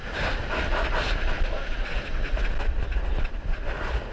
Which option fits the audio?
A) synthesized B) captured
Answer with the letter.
B